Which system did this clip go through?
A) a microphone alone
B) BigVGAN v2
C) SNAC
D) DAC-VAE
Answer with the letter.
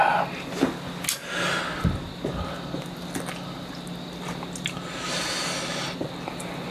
A